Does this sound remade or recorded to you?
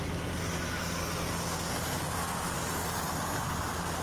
recorded